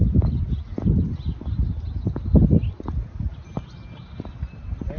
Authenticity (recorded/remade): recorded